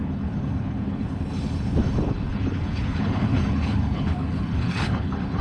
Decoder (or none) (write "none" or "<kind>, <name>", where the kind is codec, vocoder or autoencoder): codec, HILCodec